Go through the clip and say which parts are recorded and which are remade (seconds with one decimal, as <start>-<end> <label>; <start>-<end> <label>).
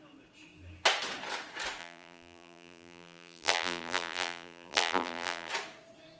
0.0-1.8 recorded; 1.8-5.5 remade; 5.5-6.2 recorded